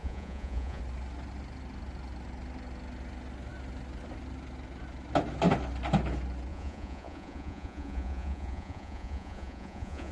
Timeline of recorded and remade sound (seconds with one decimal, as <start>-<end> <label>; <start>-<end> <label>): 0.0-0.8 remade; 0.8-6.5 recorded; 6.5-10.1 remade